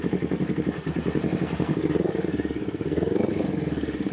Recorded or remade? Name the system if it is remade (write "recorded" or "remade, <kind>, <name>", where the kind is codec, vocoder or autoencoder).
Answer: remade, codec, SNAC